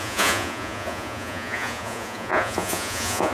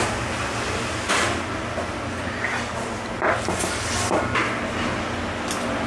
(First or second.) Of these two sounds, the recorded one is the second